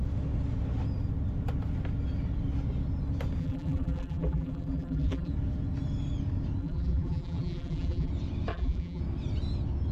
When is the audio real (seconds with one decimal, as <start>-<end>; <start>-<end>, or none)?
0.0-3.4; 5.3-6.6; 8.1-8.5; 9.0-9.9